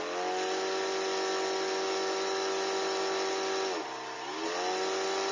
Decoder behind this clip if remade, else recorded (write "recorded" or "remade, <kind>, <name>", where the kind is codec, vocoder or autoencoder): recorded